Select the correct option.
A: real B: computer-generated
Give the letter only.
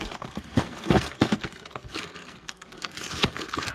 B